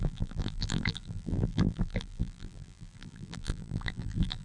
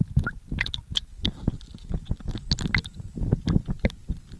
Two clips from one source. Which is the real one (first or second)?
second